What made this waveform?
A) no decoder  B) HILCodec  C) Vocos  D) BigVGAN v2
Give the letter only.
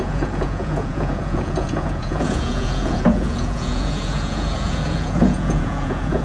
C